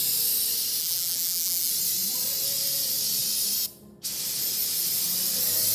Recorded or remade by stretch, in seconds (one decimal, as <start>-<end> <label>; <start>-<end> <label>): 0.0-0.8 recorded; 0.8-1.7 remade; 1.7-5.7 recorded